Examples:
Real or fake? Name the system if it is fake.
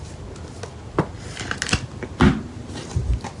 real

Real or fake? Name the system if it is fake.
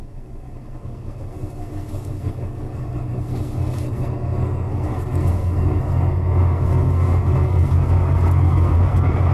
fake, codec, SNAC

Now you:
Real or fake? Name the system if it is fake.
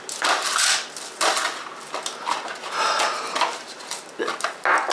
real